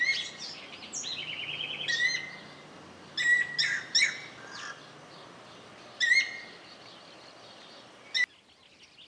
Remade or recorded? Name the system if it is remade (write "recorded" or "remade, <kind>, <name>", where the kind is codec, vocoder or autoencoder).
recorded